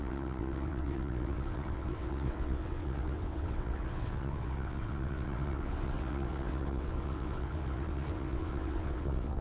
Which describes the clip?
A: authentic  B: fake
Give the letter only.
B